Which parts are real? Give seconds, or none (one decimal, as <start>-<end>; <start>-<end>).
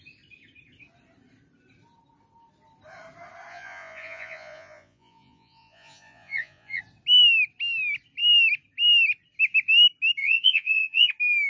0.0-3.5; 6.8-10.2; 11.1-11.5